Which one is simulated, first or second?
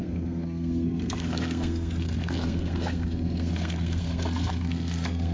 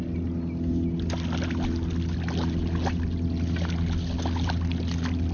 first